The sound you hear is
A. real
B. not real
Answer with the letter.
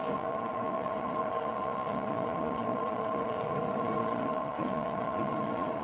B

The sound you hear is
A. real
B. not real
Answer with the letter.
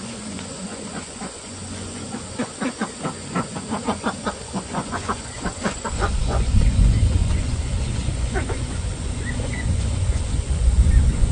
B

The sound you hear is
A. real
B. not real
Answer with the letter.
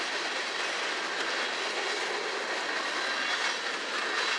A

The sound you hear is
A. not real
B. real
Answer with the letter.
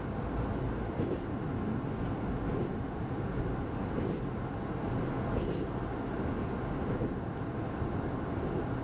B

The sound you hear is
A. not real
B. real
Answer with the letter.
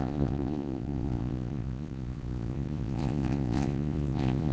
A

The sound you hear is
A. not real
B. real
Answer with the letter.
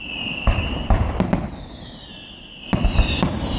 B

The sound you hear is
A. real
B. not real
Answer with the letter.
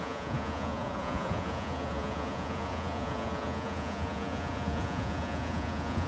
B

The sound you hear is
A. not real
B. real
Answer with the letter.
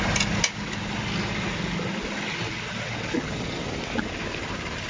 B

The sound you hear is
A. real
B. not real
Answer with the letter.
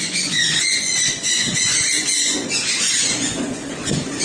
B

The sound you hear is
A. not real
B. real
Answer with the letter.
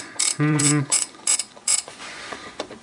A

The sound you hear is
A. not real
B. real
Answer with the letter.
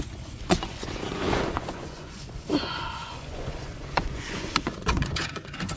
A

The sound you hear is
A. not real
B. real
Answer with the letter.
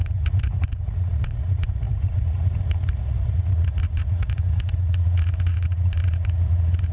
A